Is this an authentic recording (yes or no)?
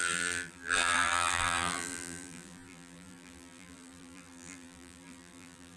no